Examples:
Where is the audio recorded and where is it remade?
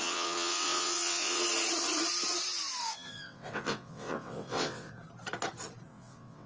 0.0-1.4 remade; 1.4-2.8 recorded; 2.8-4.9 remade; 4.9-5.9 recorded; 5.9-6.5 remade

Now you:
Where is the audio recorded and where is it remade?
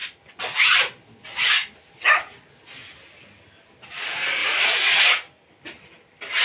0.0-4.4 recorded; 4.4-5.0 remade; 5.0-6.4 recorded